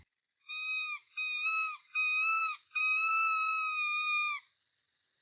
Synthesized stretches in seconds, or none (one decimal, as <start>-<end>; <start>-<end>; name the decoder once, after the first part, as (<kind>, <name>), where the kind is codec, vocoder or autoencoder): 2.4-3.1 (vocoder, BigVGAN v2)